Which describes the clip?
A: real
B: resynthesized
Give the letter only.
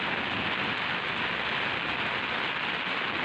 A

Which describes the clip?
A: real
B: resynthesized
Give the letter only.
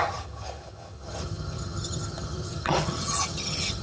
B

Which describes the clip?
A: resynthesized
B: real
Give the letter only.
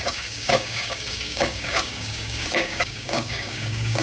A